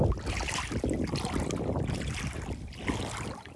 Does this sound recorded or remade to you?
recorded